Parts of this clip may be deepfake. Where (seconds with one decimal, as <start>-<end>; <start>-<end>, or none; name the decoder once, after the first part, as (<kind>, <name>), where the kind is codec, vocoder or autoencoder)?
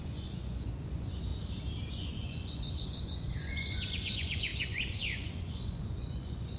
0.0-1.3 (vocoder, Vocos); 1.9-6.6